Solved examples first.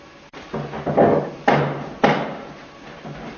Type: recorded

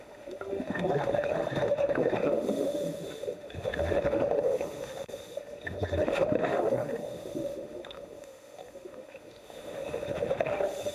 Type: remade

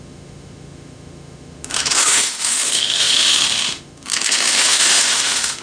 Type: remade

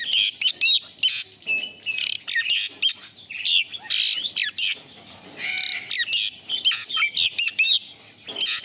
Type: recorded